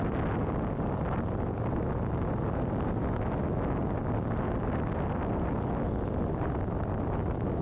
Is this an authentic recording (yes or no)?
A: yes